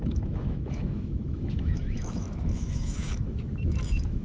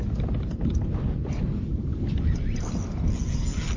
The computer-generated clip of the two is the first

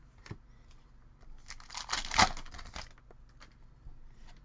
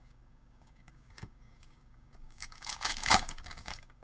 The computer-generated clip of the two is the second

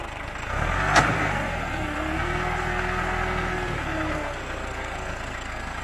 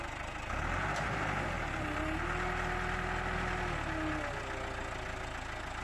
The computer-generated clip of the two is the first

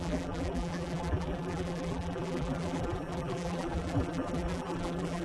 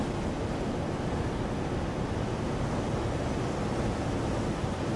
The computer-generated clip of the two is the first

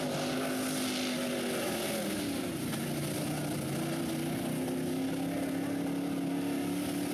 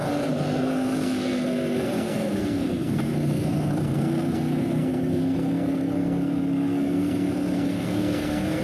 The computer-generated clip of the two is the second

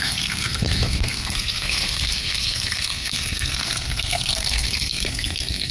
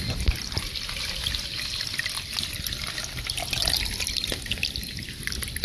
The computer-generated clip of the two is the first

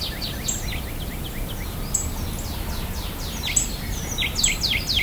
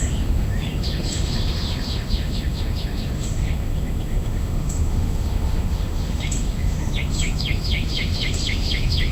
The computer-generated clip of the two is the second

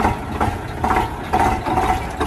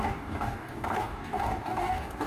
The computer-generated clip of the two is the second